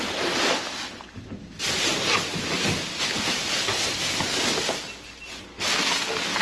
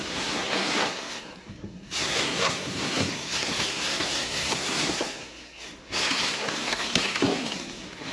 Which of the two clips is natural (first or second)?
first